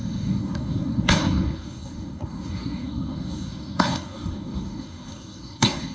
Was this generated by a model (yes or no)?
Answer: yes